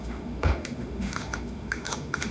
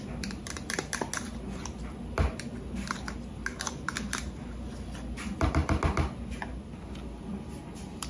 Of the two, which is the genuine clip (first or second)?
second